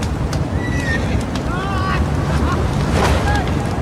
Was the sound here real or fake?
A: real